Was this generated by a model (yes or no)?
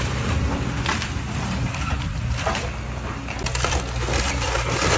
no